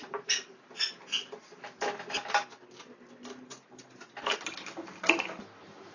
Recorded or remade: recorded